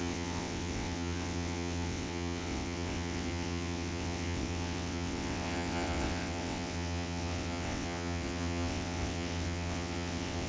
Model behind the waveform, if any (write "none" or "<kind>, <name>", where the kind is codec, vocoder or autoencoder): vocoder, WaveNeXt